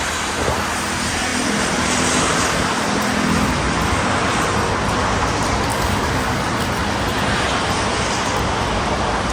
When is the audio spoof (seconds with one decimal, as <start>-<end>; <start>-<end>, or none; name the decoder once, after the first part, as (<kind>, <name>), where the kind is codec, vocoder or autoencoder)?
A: 5.7-6.4 (codec, DAC)